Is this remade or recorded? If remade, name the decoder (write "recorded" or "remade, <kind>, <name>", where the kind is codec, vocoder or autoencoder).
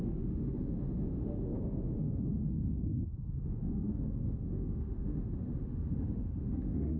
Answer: remade, autoencoder, DAC-VAE